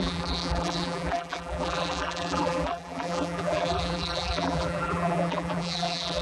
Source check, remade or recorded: remade